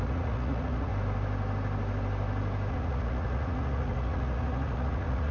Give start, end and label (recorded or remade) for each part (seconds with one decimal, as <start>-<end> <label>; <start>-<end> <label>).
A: 0.0-0.9 remade; 0.9-2.7 recorded; 2.7-5.3 remade